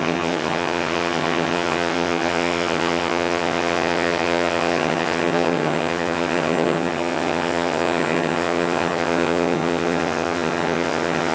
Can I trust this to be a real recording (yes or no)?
no